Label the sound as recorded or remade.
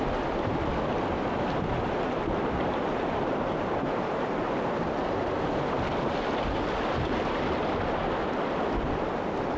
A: recorded